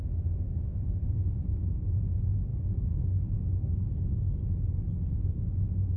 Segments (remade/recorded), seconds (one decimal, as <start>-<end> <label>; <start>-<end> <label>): 0.0-2.5 recorded; 2.5-4.4 remade; 4.4-6.0 recorded